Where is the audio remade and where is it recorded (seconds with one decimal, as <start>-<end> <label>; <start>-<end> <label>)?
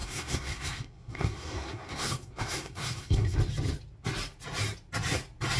0.0-3.4 remade; 3.4-5.6 recorded